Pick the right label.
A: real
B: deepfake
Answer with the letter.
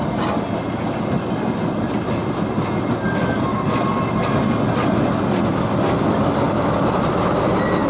A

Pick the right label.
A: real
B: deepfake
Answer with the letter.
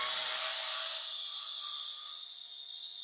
A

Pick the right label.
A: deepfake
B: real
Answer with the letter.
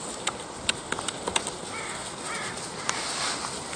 B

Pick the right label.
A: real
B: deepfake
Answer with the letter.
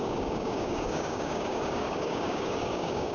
B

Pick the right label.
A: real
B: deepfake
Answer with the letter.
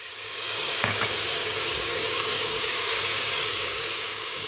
B